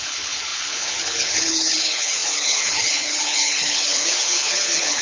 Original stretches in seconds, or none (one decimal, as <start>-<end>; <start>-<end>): none